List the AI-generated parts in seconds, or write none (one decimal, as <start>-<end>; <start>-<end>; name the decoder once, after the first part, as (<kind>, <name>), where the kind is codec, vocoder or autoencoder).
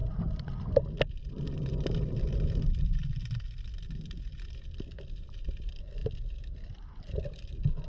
none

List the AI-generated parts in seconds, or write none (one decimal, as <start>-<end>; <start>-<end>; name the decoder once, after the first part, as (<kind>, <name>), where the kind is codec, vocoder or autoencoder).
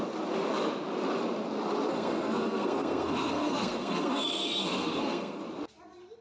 1.9-5.4 (codec, SNAC)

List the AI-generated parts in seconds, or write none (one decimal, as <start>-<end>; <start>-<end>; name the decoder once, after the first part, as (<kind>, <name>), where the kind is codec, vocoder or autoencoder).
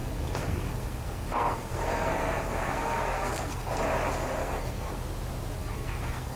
0.0-3.8 (codec, SNAC); 4.4-5.0; 5.6-6.4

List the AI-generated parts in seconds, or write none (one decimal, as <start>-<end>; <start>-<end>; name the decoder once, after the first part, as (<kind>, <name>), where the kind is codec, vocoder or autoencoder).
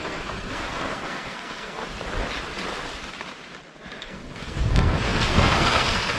0.0-1.8 (codec, SNAC); 4.0-6.2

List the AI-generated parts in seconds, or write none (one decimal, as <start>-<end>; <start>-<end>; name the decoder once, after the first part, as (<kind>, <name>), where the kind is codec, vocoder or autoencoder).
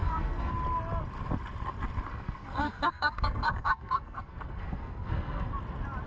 0.0-0.5 (codec, SNAC); 2.1-5.5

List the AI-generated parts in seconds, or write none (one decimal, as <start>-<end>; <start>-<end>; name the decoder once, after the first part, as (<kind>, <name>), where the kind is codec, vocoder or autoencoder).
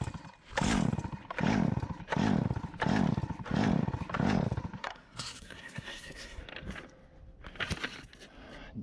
4.8-6.4 (codec, SNAC)